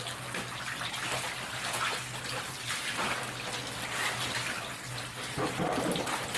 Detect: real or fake real